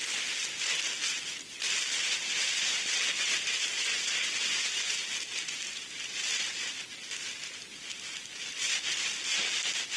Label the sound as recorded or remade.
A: recorded